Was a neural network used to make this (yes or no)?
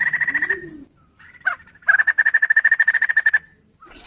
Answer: no